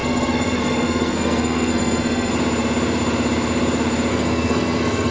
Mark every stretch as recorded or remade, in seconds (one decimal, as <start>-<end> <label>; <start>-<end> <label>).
0.0-2.3 remade; 2.3-4.1 recorded; 4.1-5.1 remade